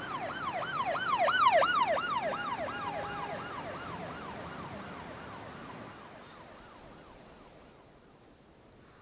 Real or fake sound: real